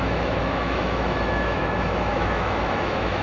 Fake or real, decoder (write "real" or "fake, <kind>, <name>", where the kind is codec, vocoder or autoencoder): fake, autoencoder, DAC-VAE